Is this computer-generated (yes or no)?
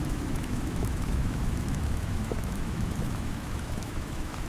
yes